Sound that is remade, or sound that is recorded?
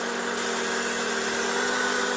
recorded